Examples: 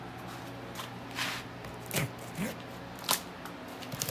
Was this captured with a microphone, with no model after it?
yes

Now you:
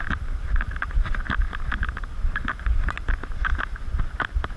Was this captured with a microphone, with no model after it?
yes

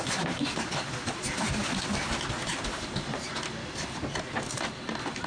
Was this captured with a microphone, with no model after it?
yes